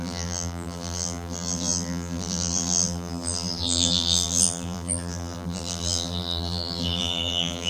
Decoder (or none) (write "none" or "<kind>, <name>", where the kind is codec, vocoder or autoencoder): vocoder, BigVGAN v2